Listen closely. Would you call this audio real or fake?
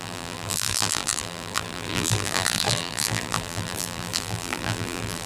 fake